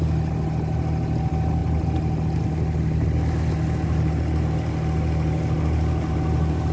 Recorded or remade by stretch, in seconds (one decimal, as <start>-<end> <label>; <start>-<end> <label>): 0.0-6.7 recorded